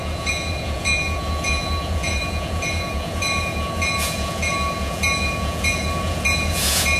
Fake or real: fake